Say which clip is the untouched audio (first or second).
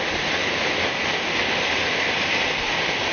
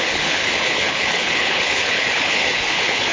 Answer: first